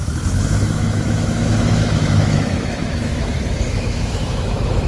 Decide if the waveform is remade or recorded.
remade